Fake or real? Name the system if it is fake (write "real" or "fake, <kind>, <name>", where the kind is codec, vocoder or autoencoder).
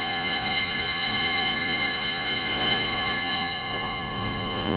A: fake, vocoder, Vocos